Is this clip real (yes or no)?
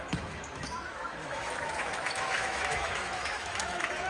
no